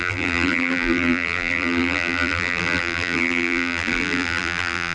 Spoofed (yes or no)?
yes